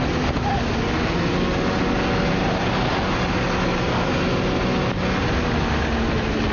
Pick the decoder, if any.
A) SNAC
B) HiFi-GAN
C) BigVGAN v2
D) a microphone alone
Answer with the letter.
D